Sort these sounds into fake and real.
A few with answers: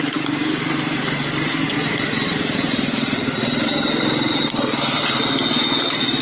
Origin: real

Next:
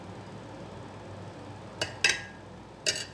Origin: real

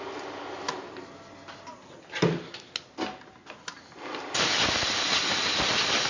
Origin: real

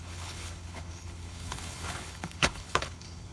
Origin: fake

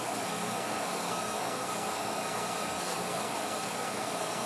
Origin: fake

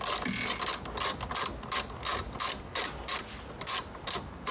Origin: real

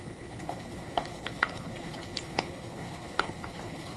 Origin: fake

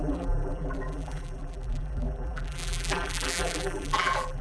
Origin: fake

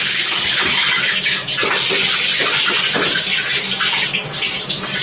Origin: real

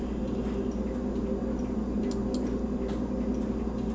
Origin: real